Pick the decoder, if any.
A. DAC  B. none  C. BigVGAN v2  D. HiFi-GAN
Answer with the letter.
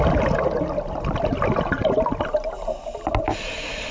B